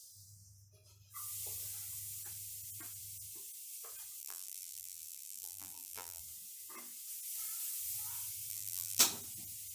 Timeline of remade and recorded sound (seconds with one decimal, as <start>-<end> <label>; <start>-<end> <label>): 0.0-4.2 recorded; 4.2-6.2 remade; 6.2-8.5 recorded; 8.5-9.0 remade; 9.0-9.7 recorded